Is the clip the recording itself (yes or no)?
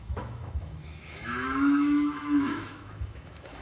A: no